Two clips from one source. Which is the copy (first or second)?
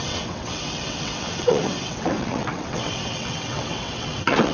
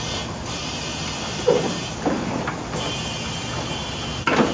first